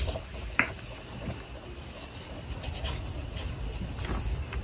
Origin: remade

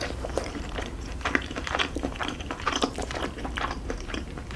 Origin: remade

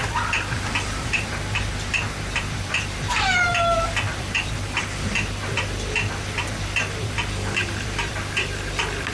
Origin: remade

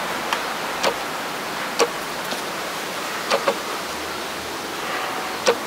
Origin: recorded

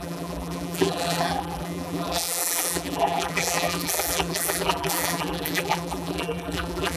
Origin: remade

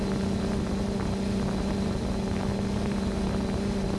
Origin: recorded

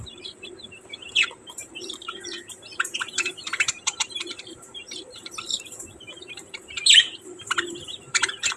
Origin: remade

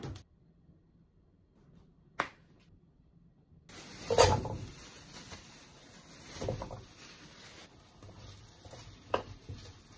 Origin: recorded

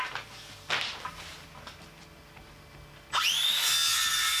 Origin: recorded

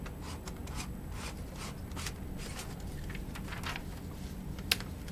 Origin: recorded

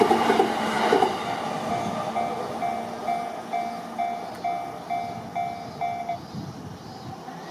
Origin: recorded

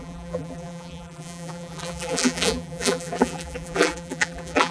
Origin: remade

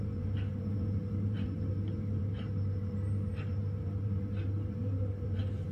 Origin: remade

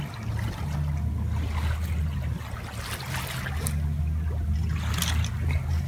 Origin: recorded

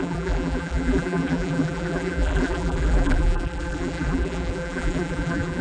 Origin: remade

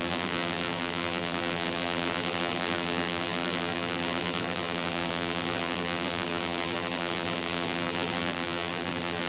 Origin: remade